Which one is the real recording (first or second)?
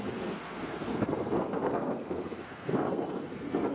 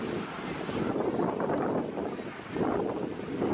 second